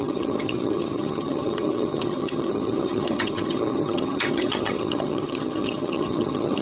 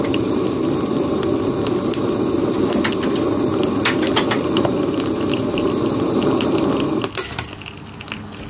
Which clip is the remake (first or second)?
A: first